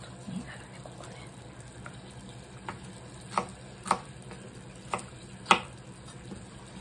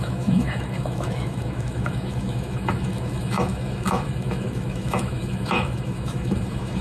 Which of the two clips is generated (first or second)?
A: second